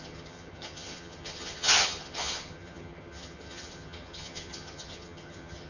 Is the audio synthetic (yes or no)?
yes